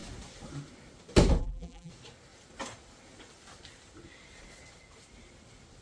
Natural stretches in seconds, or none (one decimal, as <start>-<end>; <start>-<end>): 0.0-1.4; 1.9-5.8